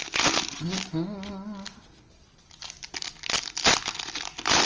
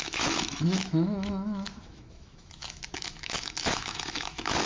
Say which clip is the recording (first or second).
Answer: first